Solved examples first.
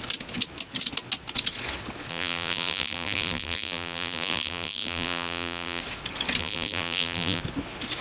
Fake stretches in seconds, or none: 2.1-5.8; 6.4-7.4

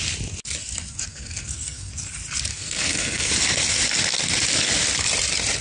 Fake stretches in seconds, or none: 1.1-1.9; 2.5-3.3

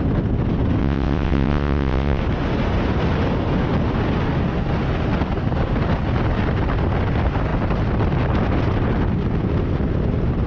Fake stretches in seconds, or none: 0.8-2.2

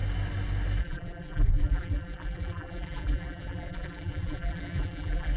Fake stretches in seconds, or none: 0.8-5.4